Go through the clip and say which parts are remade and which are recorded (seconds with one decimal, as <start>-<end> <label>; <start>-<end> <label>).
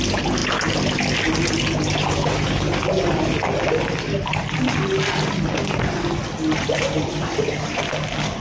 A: 0.0-8.4 recorded